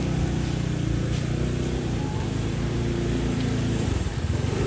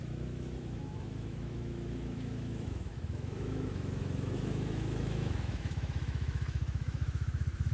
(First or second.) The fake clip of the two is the second